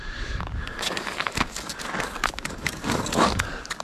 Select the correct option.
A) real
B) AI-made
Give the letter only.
B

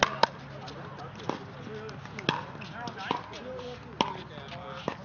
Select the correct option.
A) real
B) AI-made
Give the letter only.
A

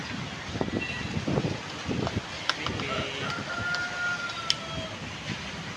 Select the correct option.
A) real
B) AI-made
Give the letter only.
A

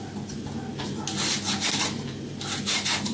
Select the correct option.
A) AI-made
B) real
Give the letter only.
B